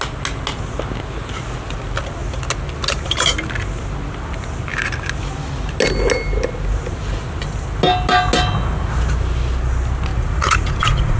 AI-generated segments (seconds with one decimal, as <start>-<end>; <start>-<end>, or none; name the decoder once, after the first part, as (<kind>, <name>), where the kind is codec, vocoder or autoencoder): 10.1-11.2 (vocoder, Vocos)